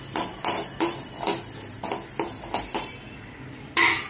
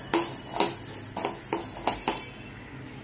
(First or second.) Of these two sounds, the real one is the second